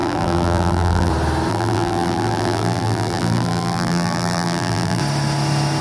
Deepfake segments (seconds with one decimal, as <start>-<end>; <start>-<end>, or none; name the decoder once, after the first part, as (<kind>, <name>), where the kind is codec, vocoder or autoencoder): 0.0-1.1 (vocoder, BigVGAN v2); 1.5-5.0